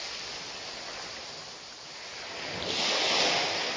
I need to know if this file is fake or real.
real